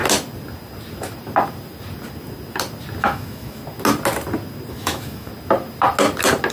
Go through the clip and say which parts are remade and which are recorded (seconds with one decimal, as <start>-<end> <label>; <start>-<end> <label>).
0.0-3.0 recorded; 3.0-3.6 remade; 3.6-4.7 recorded; 4.7-5.3 remade; 5.3-6.5 recorded